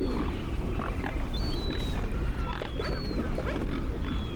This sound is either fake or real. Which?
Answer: real